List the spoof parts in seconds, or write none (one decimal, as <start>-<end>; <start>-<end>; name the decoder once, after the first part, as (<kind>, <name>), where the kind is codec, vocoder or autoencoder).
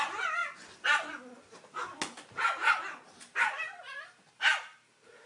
2.6-5.3 (vocoder, BigVGAN v2)